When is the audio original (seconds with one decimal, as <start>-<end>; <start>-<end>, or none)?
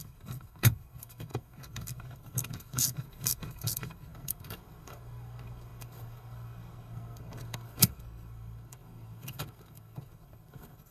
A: none